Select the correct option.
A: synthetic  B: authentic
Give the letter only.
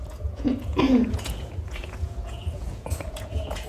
A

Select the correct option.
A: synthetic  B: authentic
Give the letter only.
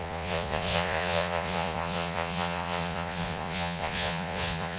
A